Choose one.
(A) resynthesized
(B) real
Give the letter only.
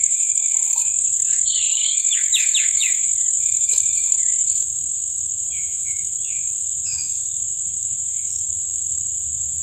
A